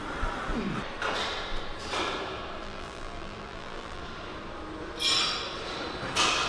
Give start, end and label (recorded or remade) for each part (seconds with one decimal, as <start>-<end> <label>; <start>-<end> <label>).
0.0-2.6 recorded; 2.6-4.0 remade; 4.0-6.5 recorded